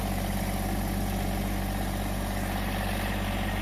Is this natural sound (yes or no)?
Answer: yes